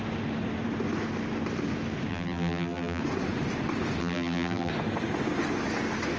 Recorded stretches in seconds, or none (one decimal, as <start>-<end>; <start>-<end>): 0.0-2.1; 3.0-4.0; 4.7-6.2